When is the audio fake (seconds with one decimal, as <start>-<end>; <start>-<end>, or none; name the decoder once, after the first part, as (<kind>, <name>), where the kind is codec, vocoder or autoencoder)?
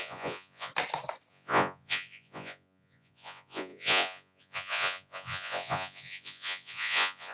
0.0-0.7 (vocoder, Vocos); 1.3-7.3